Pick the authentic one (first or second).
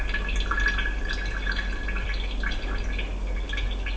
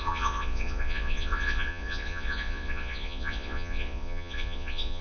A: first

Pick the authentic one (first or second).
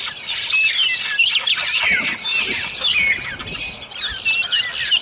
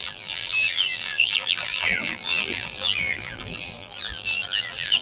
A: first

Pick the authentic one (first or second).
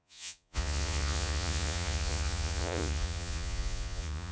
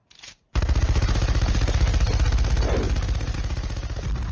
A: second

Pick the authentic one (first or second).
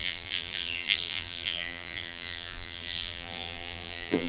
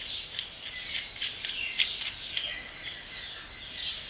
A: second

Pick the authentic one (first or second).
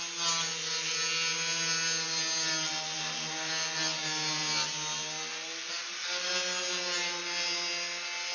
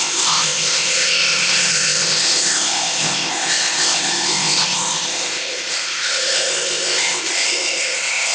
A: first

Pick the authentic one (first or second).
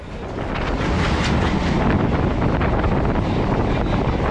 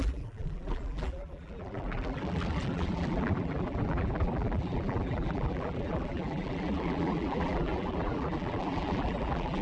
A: first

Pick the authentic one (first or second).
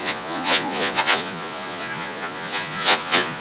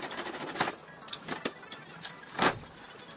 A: second